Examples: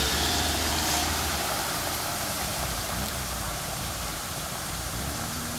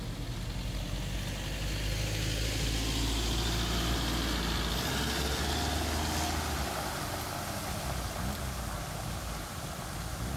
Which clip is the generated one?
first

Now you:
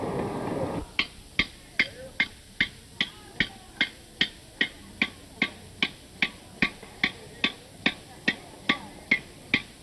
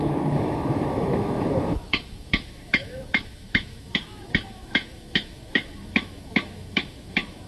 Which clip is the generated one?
second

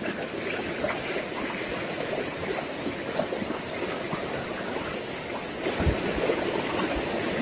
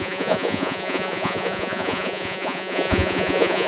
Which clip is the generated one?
second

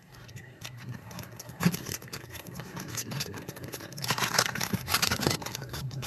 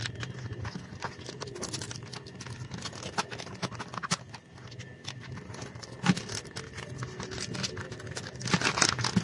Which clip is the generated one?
first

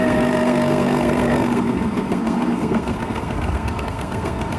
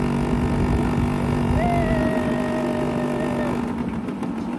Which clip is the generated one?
first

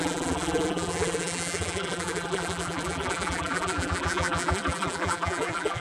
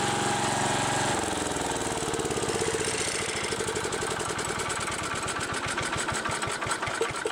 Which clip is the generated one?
first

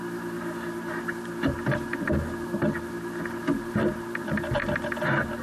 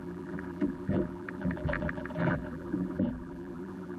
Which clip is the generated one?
second